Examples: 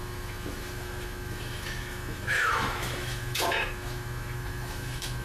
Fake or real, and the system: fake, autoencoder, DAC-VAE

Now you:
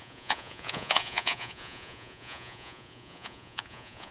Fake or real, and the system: fake, vocoder, Vocos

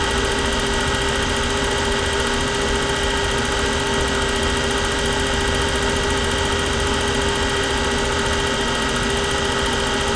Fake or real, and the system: real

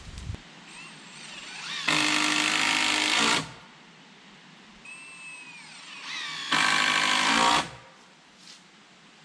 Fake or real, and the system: real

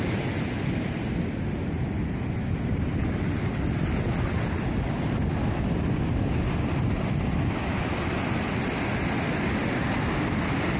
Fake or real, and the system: real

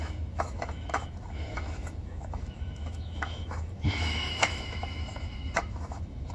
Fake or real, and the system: fake, autoencoder, DAC-VAE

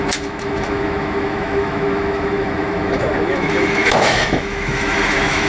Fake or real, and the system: fake, autoencoder, DAC-VAE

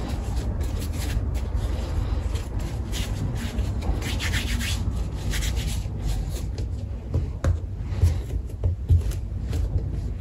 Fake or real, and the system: real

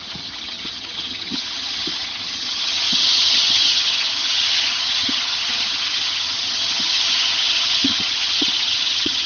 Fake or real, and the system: fake, vocoder, HiFi-GAN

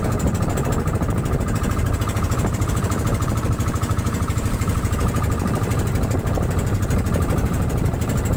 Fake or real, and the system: fake, vocoder, BigVGAN v2